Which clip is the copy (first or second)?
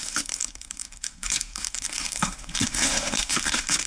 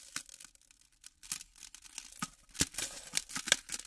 first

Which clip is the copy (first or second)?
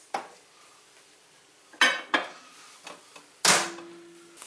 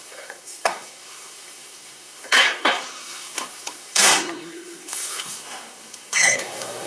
second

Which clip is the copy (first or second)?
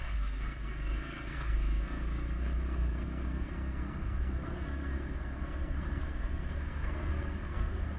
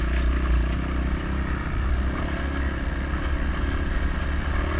first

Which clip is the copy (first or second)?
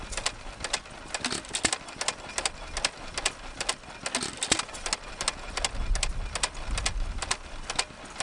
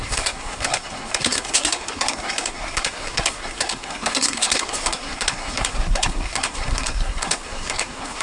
second